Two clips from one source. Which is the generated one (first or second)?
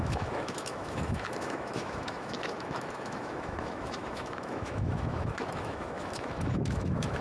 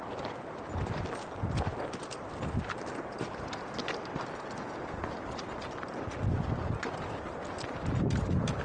first